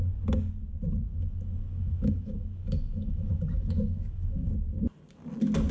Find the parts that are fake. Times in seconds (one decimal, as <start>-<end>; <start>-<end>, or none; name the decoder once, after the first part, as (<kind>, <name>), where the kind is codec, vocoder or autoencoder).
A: 1.1-4.5 (autoencoder, DAC-VAE)